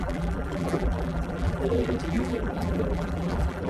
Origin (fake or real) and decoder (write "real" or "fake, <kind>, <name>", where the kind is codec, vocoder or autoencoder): fake, vocoder, BigVGAN v2